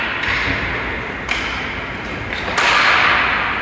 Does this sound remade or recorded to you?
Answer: recorded